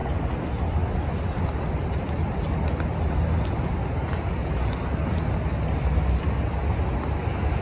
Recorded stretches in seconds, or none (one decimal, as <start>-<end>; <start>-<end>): 0.0-7.6